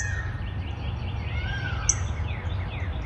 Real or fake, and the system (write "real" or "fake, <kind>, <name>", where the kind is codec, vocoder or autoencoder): real